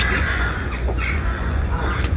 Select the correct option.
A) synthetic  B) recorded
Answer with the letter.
A